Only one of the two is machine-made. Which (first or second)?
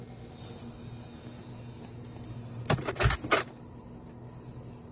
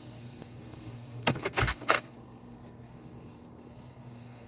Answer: second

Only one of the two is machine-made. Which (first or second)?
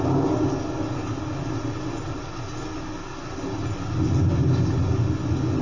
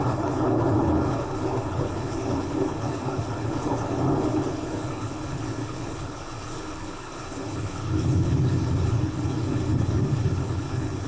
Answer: second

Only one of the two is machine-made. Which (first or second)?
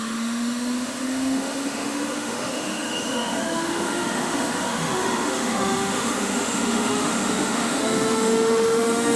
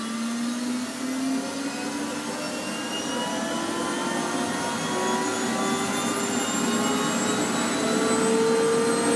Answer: first